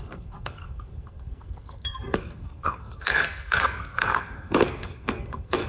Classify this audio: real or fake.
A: fake